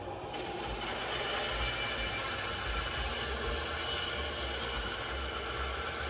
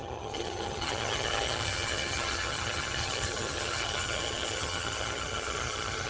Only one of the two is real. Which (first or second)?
first